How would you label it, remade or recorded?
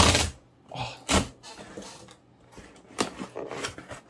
recorded